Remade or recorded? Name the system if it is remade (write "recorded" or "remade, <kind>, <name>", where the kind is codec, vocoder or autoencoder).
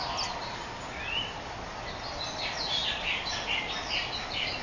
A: recorded